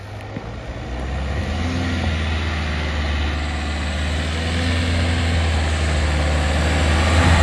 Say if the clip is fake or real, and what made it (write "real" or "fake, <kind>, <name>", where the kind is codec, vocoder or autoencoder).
real